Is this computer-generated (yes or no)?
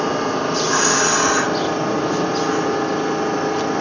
no